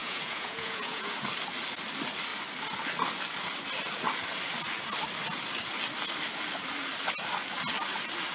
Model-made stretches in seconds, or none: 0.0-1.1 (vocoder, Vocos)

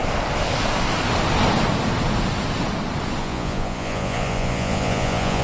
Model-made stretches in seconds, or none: 3.2-5.4 (vocoder, Vocos)

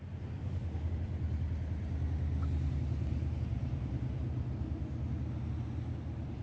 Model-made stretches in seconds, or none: 0.4-0.9 (codec, DAC)